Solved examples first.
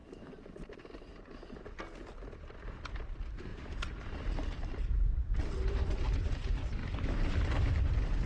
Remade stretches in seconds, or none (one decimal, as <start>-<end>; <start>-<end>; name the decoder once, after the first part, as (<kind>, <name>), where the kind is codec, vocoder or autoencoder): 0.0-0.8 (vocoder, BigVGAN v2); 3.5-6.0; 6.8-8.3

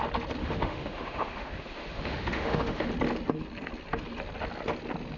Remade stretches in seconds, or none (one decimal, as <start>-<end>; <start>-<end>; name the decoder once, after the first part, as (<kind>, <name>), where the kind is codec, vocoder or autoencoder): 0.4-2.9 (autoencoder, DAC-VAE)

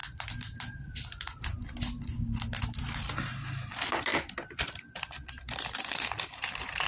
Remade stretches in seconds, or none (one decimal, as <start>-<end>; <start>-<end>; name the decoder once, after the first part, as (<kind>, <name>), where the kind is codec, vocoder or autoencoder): 0.0-1.5 (vocoder, BigVGAN v2); 2.6-4.1; 5.0-6.9

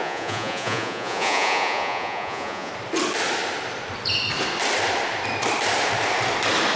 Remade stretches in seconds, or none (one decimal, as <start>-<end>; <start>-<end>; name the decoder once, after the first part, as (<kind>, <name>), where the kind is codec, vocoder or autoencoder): 0.0-2.7 (vocoder, Vocos)